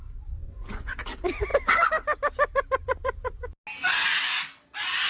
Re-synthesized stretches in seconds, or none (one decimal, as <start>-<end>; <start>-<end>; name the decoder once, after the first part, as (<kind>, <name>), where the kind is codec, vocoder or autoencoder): 0.4-1.0 (vocoder, Vocos)